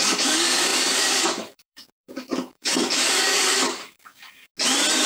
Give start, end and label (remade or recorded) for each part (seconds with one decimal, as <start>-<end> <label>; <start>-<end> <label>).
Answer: 0.0-4.5 remade; 4.5-5.1 recorded